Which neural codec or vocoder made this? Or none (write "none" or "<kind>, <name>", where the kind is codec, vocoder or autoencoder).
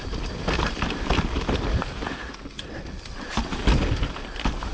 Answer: none